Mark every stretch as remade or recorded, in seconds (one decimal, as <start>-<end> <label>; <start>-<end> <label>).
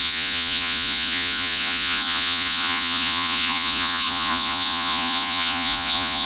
0.0-6.3 remade